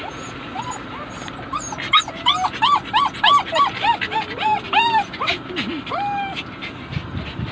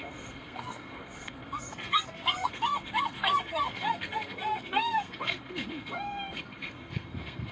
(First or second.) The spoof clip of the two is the second